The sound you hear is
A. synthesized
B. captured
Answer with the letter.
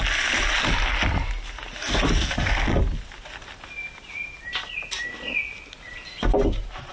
B